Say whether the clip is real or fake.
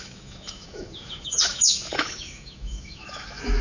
fake